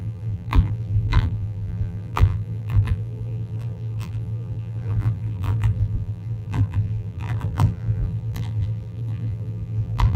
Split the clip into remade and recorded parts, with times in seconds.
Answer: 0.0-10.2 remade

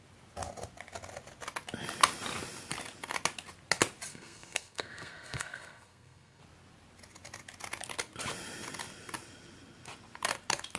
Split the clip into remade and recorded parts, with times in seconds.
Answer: 0.0-4.1 recorded; 4.1-6.4 remade; 6.4-10.8 recorded

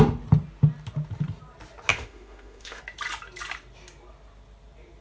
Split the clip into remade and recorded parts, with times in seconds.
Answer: 0.0-1.9 recorded; 1.9-2.8 remade; 2.8-5.0 recorded